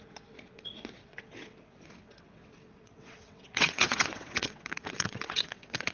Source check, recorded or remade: remade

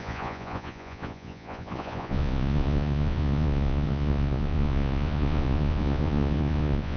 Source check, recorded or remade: remade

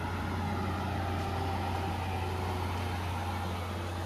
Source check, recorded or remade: recorded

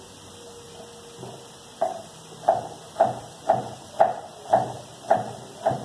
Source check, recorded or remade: remade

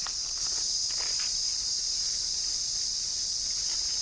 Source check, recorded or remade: recorded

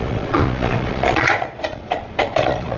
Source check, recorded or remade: remade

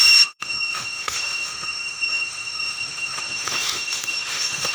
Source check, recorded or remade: remade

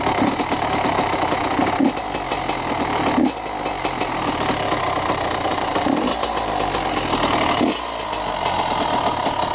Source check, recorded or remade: recorded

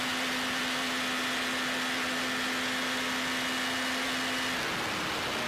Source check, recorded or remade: recorded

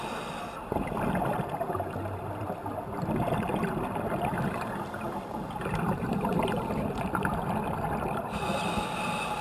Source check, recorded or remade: recorded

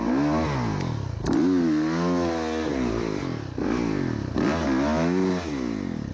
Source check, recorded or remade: recorded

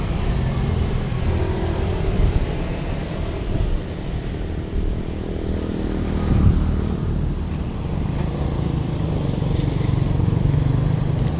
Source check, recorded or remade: remade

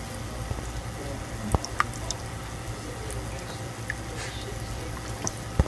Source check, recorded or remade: recorded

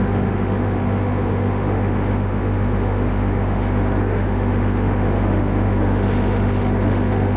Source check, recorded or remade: remade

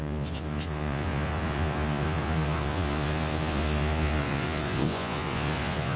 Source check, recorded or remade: remade